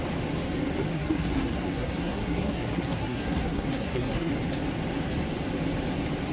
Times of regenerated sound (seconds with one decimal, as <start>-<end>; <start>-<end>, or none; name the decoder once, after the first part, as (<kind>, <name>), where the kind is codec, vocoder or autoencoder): 0.9-4.3 (codec, SNAC)